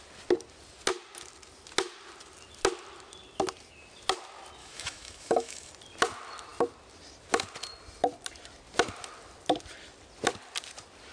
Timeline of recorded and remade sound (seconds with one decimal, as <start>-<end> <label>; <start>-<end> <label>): 0.0-4.6 recorded; 4.6-5.7 remade; 5.7-11.1 recorded